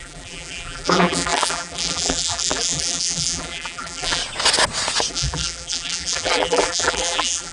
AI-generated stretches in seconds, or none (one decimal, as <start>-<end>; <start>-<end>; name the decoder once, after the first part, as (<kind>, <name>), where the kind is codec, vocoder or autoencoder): 0.0-4.2 (vocoder, BigVGAN v2); 5.1-7.5